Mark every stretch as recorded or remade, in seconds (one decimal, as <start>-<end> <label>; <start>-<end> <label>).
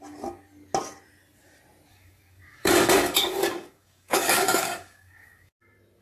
0.0-1.9 recorded; 1.9-5.5 remade; 5.5-6.0 recorded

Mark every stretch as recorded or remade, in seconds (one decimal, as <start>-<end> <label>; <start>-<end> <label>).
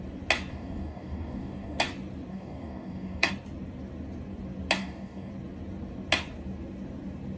0.0-0.5 recorded; 0.5-1.8 remade; 1.8-2.3 recorded; 2.3-3.3 remade; 3.3-4.8 recorded; 4.8-5.3 remade; 5.3-7.4 recorded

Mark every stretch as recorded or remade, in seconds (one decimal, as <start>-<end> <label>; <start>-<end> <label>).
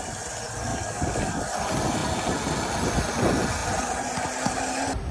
0.0-0.7 recorded; 0.7-1.4 remade; 1.4-5.1 recorded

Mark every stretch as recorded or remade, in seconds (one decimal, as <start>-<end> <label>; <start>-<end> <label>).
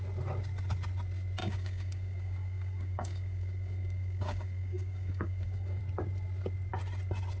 0.0-1.4 recorded; 1.4-5.8 remade; 5.8-7.4 recorded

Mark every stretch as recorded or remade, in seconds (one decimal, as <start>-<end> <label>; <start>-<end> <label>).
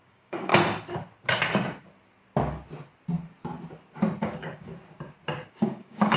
0.0-0.5 remade; 0.5-4.2 recorded; 4.2-4.7 remade; 4.7-5.5 recorded; 5.5-6.2 remade